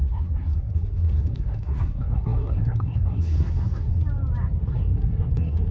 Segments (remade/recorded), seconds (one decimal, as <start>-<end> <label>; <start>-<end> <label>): 0.0-3.9 remade; 3.9-4.6 recorded; 4.6-5.7 remade